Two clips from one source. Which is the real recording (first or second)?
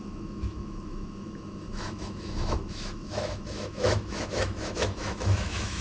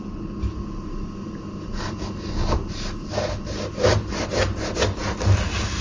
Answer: second